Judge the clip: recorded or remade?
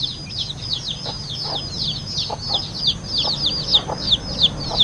recorded